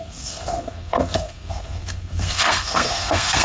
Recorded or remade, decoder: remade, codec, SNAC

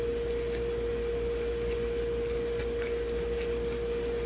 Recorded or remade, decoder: recorded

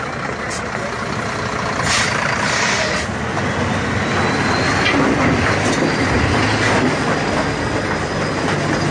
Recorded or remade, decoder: recorded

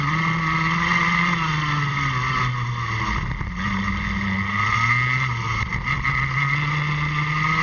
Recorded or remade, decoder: recorded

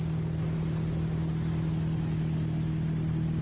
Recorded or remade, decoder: recorded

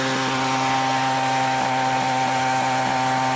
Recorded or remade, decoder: recorded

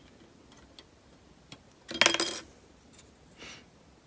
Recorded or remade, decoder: recorded